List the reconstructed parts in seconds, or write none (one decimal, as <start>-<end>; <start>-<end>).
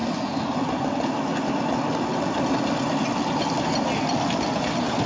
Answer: none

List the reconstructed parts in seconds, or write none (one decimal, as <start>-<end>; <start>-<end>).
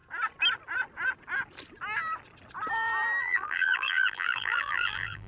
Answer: 3.2-5.3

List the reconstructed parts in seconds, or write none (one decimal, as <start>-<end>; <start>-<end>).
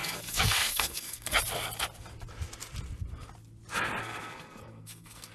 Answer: 0.0-1.4; 4.0-5.3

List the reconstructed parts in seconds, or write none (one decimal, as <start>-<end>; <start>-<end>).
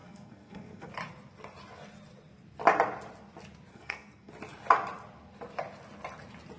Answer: 0.0-0.9; 3.7-4.3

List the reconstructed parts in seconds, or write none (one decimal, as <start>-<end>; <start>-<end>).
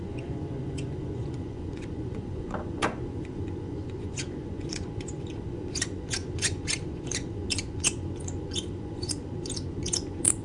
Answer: 0.0-10.4